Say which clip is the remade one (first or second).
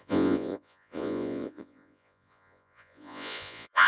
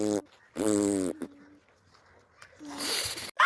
first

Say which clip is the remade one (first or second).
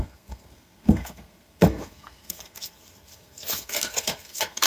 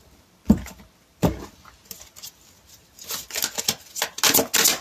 first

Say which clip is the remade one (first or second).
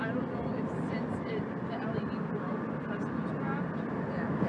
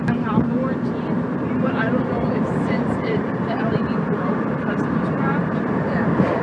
second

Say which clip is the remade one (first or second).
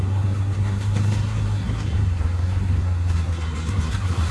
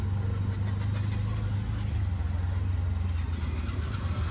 first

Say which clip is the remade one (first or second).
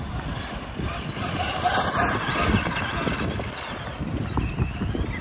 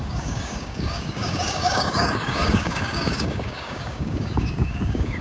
second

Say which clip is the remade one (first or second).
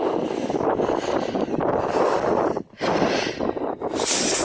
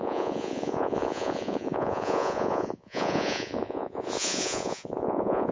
second